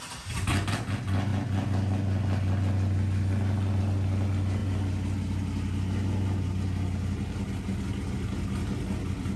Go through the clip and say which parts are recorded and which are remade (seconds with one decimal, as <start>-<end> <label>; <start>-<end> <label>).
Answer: 0.0-9.4 recorded